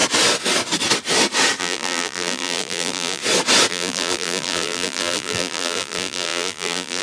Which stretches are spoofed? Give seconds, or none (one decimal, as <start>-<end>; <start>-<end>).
1.6-3.2; 3.7-7.0